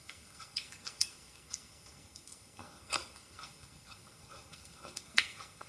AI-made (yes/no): yes